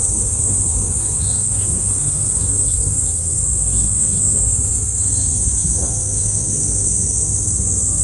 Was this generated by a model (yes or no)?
yes